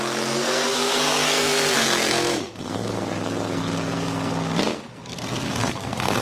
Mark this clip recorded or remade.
remade